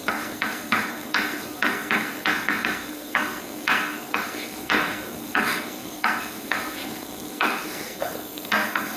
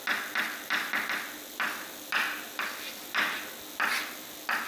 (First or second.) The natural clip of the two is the second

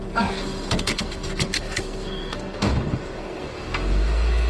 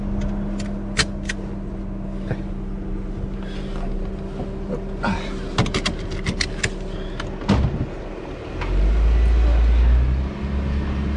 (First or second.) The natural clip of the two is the second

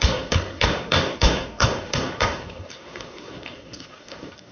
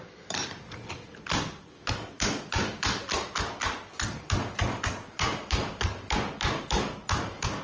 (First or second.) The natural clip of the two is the second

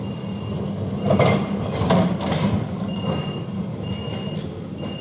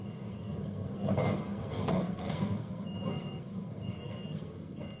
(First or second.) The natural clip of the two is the first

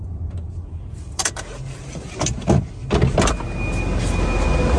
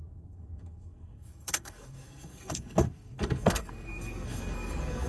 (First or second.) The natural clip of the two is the first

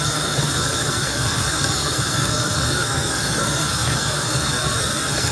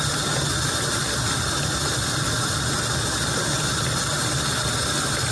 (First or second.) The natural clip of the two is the second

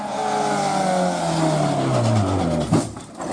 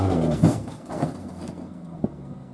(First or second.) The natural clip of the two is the first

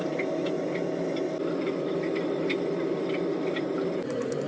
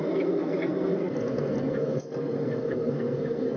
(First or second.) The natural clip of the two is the first